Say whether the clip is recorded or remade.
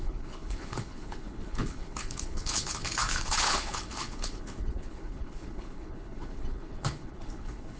remade